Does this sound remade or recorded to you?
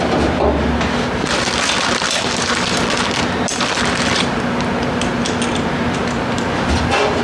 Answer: recorded